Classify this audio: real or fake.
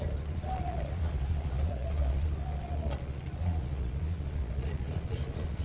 fake